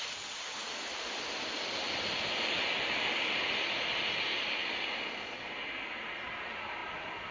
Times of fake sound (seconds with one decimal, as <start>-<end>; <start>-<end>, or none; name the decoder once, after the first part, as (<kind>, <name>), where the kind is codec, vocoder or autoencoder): none